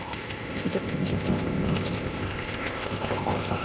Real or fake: fake